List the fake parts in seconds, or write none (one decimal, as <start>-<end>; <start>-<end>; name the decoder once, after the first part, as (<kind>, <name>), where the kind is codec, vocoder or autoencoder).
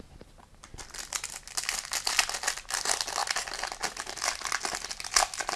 none